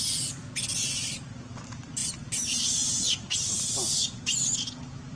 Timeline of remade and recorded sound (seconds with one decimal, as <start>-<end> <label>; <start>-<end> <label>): 0.0-5.2 recorded